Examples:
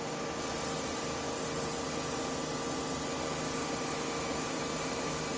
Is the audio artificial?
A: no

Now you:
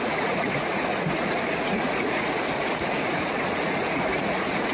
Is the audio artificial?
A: yes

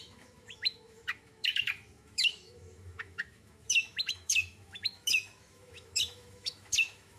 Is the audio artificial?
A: yes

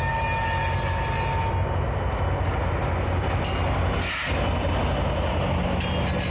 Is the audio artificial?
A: no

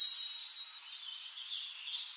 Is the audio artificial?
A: no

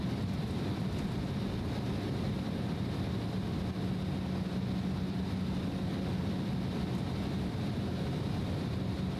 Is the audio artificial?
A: no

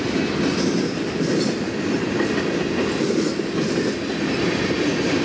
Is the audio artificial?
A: no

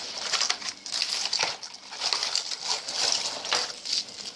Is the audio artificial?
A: no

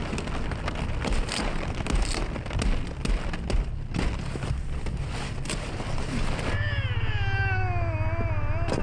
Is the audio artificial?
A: no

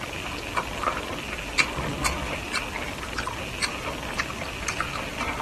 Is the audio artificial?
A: no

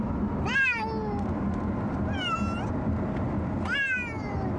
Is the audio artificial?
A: no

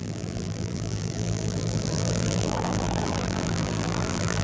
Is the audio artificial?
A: yes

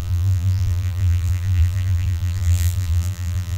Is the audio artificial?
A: yes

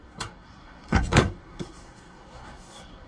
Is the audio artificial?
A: yes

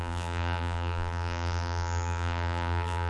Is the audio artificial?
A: yes